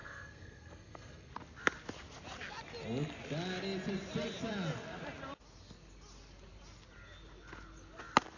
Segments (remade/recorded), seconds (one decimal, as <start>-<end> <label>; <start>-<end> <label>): 0.0-1.3 remade; 1.3-8.4 recorded